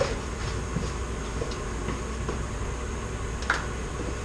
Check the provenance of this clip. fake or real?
real